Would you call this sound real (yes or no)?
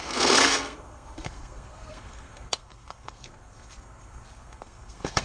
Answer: no